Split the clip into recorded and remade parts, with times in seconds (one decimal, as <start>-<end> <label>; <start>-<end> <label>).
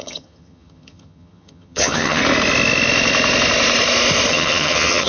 0.0-2.2 remade; 2.2-4.3 recorded; 4.3-5.1 remade